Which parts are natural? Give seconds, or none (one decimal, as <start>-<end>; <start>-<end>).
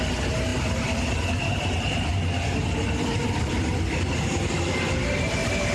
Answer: 0.0-5.7